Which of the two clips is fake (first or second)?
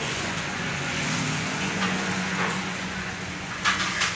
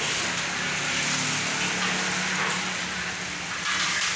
first